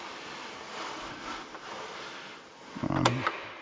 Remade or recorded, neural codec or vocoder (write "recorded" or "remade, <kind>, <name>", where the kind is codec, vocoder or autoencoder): recorded